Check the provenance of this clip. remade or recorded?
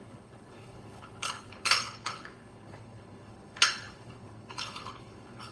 remade